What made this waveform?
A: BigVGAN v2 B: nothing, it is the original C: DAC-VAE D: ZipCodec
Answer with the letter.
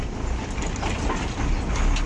B